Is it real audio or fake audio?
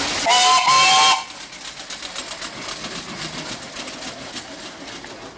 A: real